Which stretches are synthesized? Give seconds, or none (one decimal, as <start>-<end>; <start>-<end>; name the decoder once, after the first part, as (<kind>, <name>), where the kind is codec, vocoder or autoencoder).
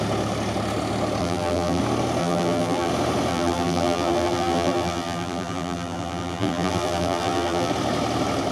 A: 1.2-1.8 (vocoder, BigVGAN v2); 2.2-2.9; 3.3-7.7